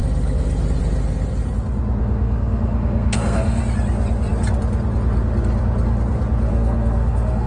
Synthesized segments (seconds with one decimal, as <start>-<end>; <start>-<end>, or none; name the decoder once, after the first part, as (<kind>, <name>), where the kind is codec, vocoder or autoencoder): 2.0-3.6 (codec, SNAC); 6.5-7.5